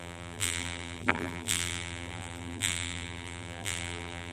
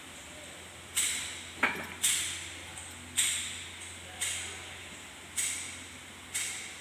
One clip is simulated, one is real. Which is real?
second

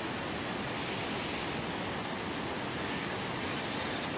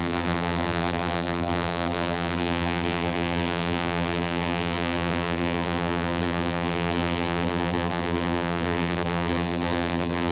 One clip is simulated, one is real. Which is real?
first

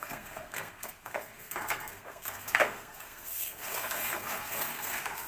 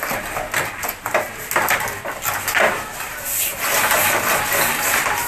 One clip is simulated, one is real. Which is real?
second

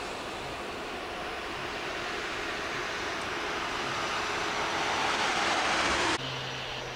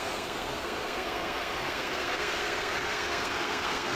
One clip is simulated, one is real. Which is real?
first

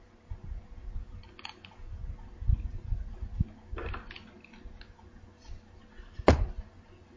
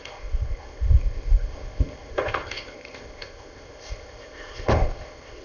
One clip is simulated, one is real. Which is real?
first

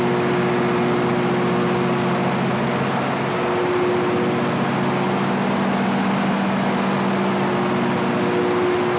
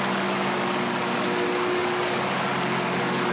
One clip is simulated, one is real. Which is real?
first